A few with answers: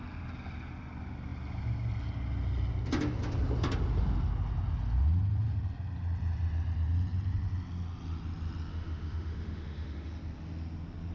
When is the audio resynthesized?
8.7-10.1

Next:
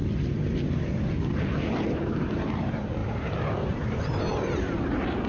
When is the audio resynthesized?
1.7-5.3

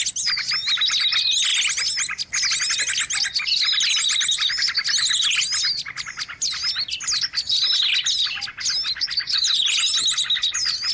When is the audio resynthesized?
none

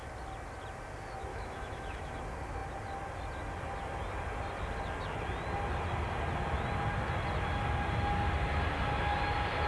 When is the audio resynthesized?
1.3-2.2